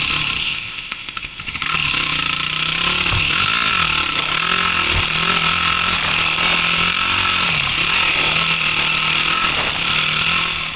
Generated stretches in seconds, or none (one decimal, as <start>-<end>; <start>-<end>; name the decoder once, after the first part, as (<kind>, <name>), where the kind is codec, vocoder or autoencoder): 0.4-1.4 (codec, ZipCodec)